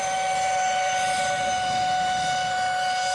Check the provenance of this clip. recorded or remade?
recorded